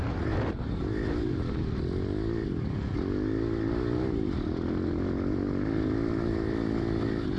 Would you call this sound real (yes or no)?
yes